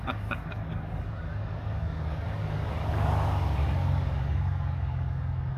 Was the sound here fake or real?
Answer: fake